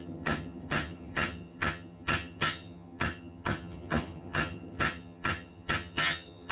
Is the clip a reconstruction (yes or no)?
yes